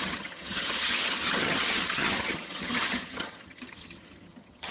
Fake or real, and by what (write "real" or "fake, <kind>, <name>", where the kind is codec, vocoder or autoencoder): fake, vocoder, HiFi-GAN